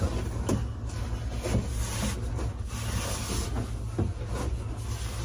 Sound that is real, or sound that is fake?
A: real